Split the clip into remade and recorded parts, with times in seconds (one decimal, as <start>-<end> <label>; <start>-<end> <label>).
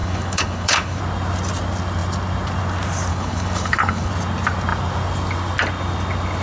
0.0-1.0 remade; 1.0-3.1 recorded; 3.1-4.1 remade; 4.1-6.4 recorded